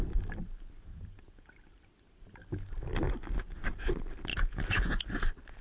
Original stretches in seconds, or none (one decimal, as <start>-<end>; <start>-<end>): 0.0-0.9; 1.5-4.3; 5.0-5.6